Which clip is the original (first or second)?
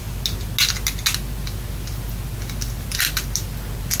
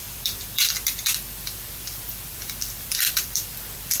first